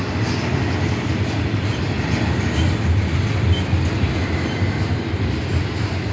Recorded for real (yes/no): yes